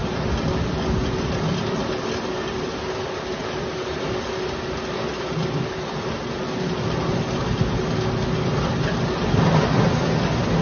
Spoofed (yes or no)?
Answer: no